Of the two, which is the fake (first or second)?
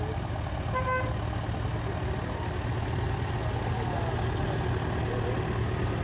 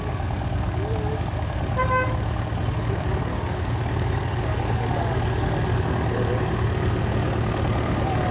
second